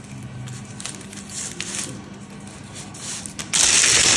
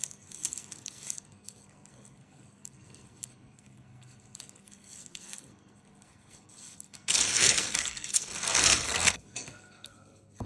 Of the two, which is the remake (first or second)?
second